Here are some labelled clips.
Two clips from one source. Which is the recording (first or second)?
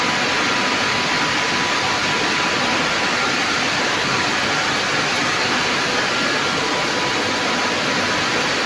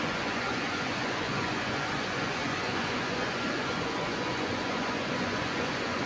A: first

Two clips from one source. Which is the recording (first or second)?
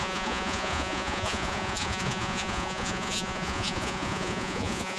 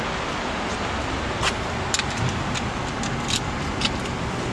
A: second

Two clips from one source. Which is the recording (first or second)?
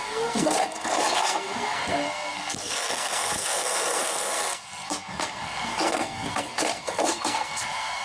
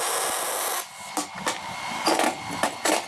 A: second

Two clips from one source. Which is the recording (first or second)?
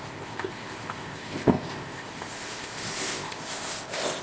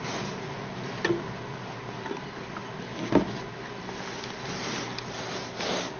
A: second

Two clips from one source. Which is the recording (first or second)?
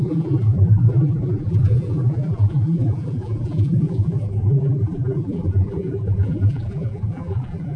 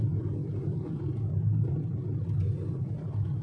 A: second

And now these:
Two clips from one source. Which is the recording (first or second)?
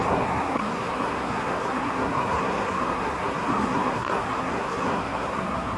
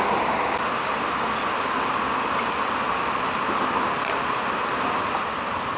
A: second